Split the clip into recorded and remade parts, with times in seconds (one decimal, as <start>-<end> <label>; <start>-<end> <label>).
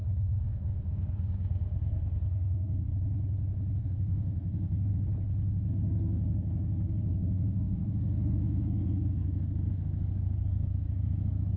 0.0-2.9 remade; 2.9-3.8 recorded; 3.8-4.9 remade; 4.9-5.7 recorded; 5.7-11.6 remade